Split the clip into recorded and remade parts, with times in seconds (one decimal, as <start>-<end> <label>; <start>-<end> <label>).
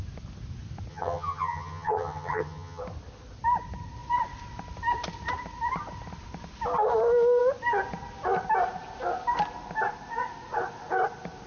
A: 0.0-0.9 recorded; 0.9-2.8 remade; 2.8-11.5 recorded